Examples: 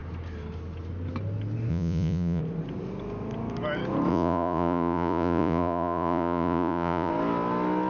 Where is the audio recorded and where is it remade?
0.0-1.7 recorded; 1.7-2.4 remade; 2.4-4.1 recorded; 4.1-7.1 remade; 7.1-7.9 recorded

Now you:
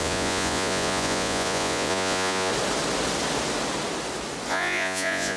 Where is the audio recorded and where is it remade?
0.0-2.5 remade; 2.5-4.5 recorded; 4.5-5.4 remade

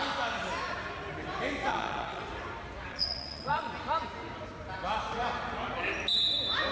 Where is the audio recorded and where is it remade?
0.0-1.7 recorded; 1.7-2.2 remade; 2.2-2.9 recorded; 2.9-3.7 remade; 3.7-6.7 recorded